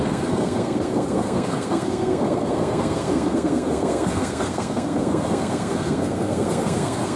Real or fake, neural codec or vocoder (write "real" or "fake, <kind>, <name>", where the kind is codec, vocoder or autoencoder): fake, codec, SNAC